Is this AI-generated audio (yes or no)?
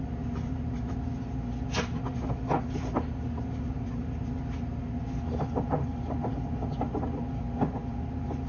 no